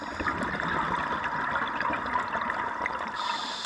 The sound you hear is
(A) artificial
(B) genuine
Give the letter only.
B